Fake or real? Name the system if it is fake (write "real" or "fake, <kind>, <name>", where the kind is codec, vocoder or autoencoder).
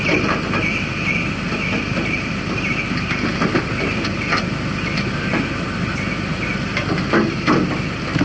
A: real